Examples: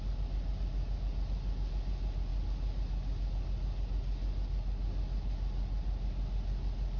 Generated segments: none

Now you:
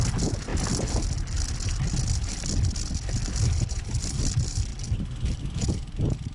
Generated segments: none

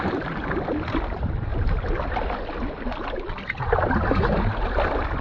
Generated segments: none

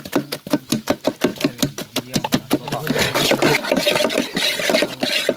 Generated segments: none

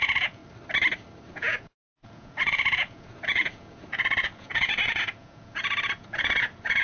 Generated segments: 0.0-0.4 (vocoder, Vocos); 1.3-6.8

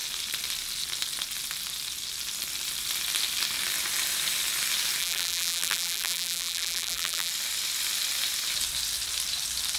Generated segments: 5.0-7.3 (vocoder, BigVGAN v2)